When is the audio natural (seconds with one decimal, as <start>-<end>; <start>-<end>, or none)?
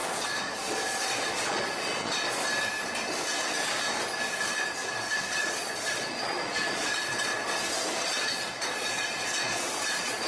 2.4-5.1; 7.3-8.0